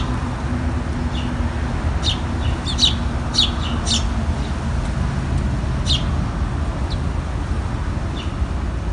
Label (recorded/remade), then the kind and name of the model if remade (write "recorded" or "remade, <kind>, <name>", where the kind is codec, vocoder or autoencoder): recorded